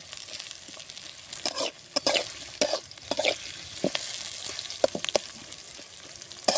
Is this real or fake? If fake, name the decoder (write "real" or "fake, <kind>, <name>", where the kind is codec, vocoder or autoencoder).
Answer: real